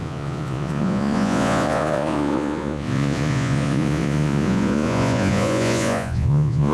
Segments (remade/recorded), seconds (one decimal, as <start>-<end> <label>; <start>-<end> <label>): 0.0-6.7 remade